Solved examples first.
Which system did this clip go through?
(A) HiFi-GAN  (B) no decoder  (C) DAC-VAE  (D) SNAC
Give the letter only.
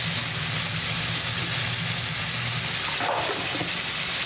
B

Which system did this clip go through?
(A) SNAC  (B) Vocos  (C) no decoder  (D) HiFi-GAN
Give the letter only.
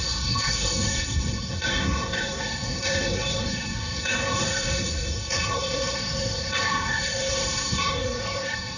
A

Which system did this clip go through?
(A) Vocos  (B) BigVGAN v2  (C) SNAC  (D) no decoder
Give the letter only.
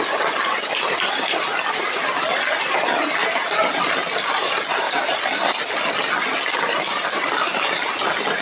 D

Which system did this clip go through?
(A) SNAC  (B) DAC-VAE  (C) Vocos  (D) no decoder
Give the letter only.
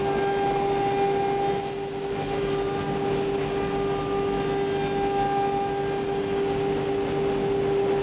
D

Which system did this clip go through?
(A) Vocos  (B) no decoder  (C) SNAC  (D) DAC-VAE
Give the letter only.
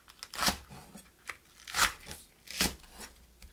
B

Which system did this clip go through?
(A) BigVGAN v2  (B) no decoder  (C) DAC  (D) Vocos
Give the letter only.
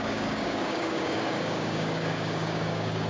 C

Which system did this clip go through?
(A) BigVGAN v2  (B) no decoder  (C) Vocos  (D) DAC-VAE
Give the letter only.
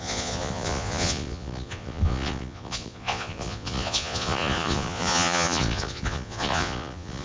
C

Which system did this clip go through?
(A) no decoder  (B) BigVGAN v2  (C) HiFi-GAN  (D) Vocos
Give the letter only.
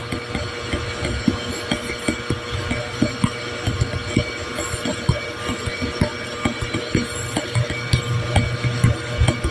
A